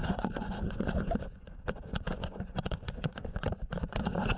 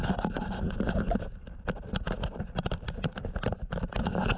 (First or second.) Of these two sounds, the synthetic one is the first